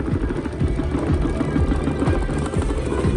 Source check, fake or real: real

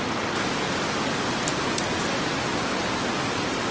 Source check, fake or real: real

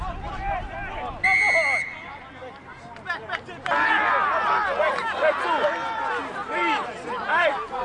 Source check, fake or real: real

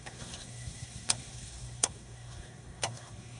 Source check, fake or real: fake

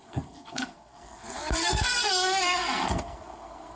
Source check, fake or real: fake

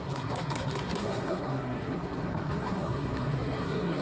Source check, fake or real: fake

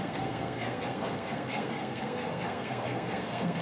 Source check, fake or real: fake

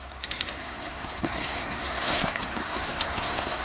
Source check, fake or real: fake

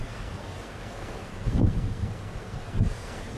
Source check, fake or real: fake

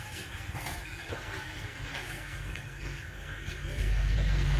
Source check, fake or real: fake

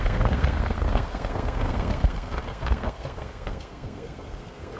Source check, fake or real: fake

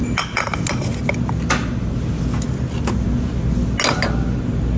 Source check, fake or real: real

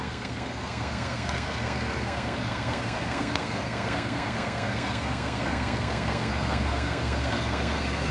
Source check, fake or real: fake